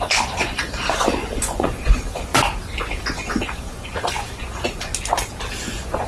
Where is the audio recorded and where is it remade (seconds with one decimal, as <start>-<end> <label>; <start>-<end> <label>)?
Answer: 0.0-2.3 remade; 2.3-3.0 recorded; 3.0-4.9 remade; 4.9-5.6 recorded; 5.6-6.1 remade